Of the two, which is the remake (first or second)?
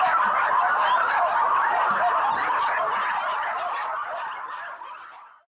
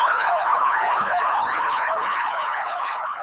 second